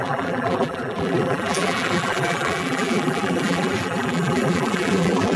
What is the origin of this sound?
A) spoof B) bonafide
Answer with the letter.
A